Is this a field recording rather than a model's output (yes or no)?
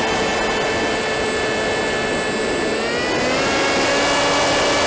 yes